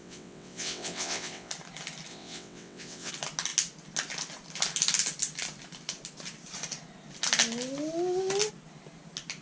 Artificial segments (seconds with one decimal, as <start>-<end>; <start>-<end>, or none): 0.0-1.5; 2.1-3.1